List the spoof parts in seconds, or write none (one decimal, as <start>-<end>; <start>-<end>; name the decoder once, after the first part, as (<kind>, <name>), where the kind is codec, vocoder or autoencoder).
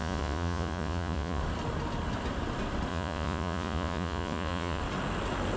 0.0-1.4 (vocoder, Vocos); 2.9-4.8